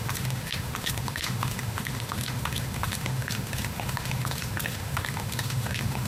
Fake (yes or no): yes